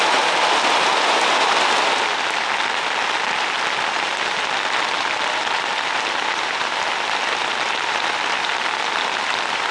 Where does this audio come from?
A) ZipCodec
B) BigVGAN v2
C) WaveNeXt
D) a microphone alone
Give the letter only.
D